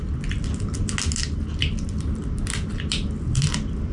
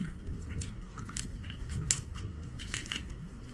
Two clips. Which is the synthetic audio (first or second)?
second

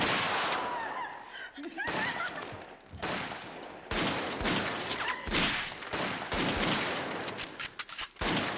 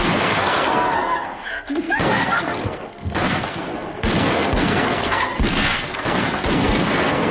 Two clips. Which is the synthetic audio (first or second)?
second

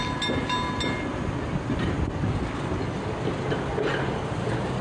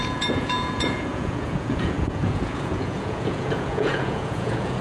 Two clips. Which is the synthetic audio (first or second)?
second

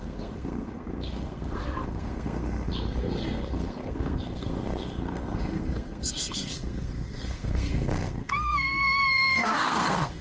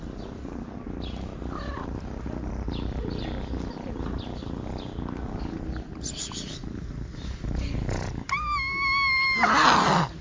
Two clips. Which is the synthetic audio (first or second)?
first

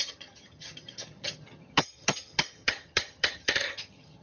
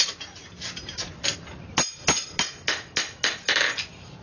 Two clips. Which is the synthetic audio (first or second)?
first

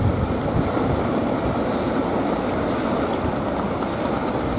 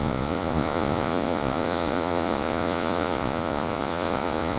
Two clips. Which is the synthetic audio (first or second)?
second